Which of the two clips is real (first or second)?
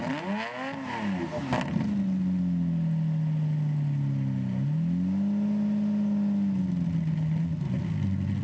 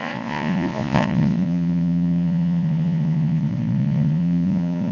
first